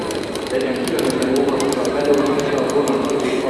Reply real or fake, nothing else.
real